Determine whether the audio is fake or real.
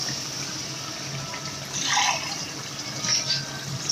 real